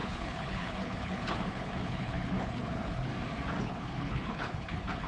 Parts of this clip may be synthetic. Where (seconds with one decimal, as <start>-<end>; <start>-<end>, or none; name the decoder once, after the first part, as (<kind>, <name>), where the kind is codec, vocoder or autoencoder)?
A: 0.0-3.1 (codec, HILCodec); 3.6-5.1